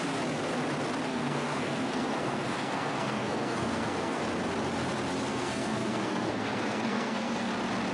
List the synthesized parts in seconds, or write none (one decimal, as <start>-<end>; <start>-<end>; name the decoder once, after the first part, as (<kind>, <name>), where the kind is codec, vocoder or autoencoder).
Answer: 1.1-4.2 (codec, SNAC); 5.3-7.5